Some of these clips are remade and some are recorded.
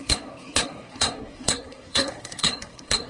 remade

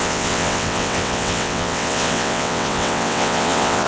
remade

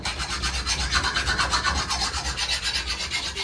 recorded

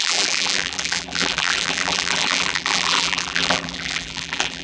remade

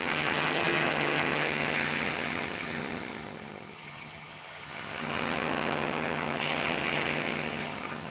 remade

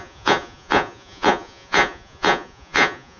remade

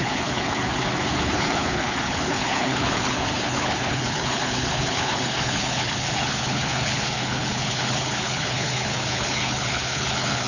remade